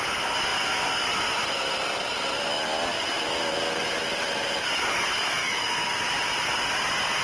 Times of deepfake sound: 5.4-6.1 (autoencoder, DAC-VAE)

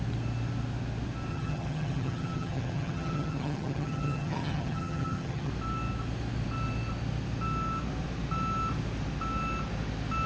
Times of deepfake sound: 1.3-5.5 (vocoder, HiFi-GAN)